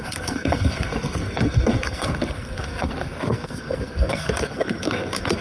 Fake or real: fake